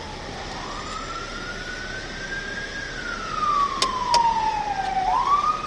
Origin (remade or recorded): recorded